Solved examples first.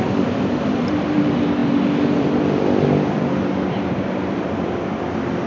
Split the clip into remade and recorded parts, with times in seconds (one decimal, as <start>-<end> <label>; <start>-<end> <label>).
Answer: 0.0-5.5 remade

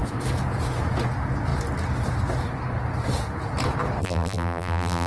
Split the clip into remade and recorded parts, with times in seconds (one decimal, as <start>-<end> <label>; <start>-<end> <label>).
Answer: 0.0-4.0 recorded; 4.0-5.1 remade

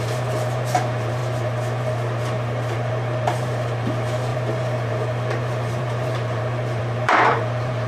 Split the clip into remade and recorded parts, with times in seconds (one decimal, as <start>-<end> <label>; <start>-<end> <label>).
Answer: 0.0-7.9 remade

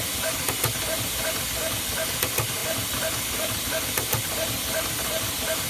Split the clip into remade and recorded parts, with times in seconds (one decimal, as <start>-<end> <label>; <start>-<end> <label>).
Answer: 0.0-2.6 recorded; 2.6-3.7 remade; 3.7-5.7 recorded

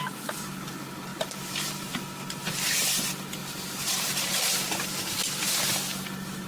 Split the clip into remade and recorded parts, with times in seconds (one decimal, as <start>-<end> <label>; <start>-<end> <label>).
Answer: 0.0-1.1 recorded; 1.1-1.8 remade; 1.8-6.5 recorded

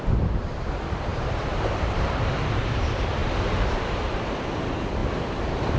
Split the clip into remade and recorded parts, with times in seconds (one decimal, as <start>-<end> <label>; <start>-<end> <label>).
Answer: 0.0-5.8 remade

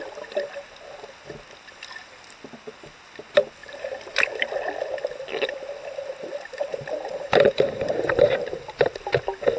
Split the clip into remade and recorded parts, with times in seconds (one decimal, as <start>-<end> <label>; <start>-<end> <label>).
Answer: 0.0-3.6 recorded; 3.6-4.5 remade; 4.5-6.7 recorded; 6.7-8.9 remade; 8.9-9.6 recorded

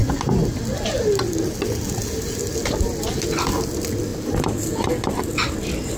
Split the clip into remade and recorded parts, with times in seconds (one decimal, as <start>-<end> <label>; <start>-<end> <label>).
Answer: 0.0-2.6 recorded; 2.6-3.2 remade; 3.2-4.1 recorded; 4.1-4.9 remade; 4.9-6.0 recorded